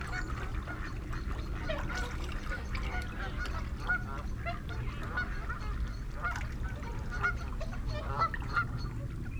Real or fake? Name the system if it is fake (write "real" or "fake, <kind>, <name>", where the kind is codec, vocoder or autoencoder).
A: real